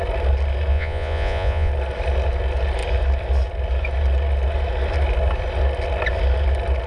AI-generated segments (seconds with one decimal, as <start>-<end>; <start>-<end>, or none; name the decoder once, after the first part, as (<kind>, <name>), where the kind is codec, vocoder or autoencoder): 0.7-1.7 (vocoder, Vocos)